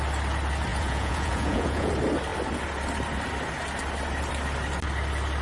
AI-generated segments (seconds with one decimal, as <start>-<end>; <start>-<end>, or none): 0.7-1.9